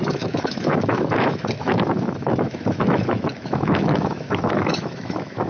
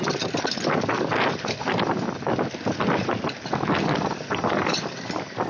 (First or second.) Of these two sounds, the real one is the second